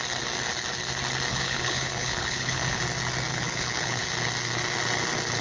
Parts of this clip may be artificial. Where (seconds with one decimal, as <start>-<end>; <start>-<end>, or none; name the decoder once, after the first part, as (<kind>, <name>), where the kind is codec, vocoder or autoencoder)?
1.3-2.8 (codec, HILCodec); 3.3-4.0